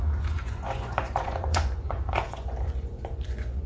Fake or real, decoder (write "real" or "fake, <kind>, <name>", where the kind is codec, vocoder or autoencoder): fake, vocoder, Vocos